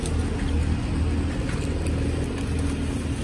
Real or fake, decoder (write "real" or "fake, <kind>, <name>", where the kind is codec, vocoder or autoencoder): real